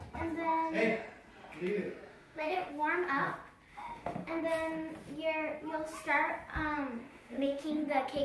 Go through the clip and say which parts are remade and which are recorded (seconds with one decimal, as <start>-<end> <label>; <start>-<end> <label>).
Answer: 0.0-2.1 recorded; 2.1-2.7 remade; 2.7-3.7 recorded; 3.7-4.4 remade; 4.4-7.1 recorded; 7.1-7.7 remade; 7.7-8.2 recorded